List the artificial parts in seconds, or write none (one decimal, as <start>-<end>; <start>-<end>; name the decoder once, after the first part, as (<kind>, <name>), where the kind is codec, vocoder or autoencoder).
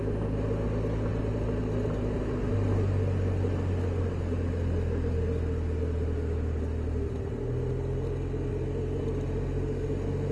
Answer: none